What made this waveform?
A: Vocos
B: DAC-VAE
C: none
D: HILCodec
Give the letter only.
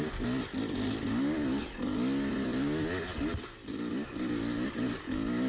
C